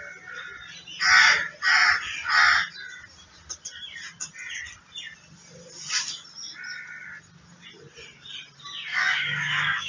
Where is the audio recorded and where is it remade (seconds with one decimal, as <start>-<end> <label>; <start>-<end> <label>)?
0.0-8.9 recorded; 8.9-9.9 remade